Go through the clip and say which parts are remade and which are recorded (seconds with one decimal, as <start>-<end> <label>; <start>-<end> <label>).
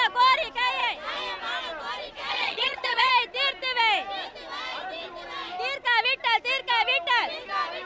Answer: 0.0-2.3 recorded; 2.3-3.1 remade; 3.1-7.9 recorded